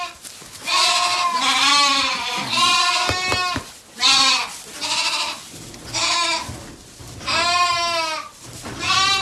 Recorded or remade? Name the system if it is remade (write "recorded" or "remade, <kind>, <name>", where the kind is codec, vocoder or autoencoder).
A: recorded